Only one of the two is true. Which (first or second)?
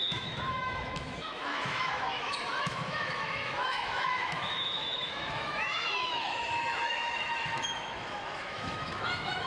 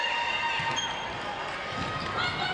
second